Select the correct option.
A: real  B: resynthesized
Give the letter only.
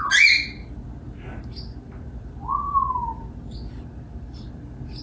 A